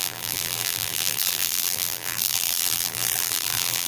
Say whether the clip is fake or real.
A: fake